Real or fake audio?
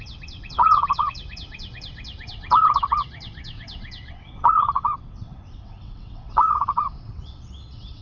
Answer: fake